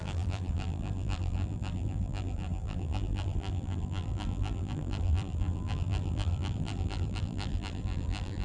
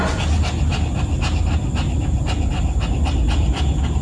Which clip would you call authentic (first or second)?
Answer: second